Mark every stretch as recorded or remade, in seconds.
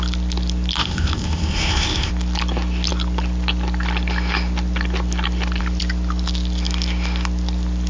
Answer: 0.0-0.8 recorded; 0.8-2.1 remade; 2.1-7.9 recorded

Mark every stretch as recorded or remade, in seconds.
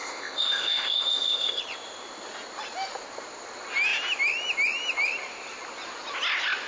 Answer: 0.0-1.6 remade; 1.6-6.7 recorded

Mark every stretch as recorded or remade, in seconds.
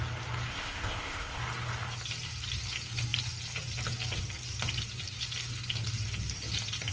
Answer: 0.0-0.5 recorded; 0.5-1.4 remade; 1.4-6.9 recorded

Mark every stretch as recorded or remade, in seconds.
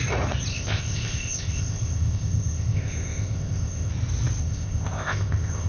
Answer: 0.0-0.5 recorded; 0.5-3.9 remade; 3.9-4.4 recorded; 4.4-5.7 remade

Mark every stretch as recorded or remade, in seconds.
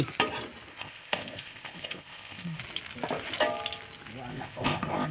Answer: 0.0-0.7 recorded; 0.7-2.6 remade; 2.6-4.3 recorded; 4.3-5.1 remade